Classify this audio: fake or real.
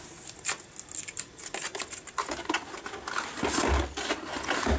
real